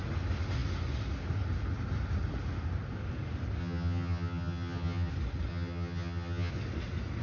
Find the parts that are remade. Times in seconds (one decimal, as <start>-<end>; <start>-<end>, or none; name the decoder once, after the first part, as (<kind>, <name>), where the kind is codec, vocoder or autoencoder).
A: 3.6-5.1 (vocoder, HiFi-GAN); 5.5-6.5